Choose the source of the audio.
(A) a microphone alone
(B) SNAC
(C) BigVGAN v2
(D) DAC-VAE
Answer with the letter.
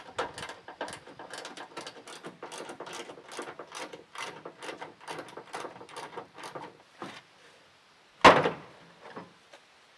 A